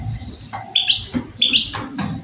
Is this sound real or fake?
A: real